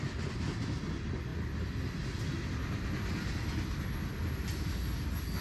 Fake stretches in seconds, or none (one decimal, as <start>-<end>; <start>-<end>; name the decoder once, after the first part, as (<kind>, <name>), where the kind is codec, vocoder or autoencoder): none